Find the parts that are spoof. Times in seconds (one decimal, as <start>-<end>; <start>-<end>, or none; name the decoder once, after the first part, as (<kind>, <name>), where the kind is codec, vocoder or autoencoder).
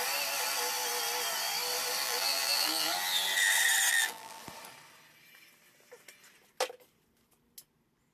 2.0-2.9 (vocoder, BigVGAN v2); 3.9-4.4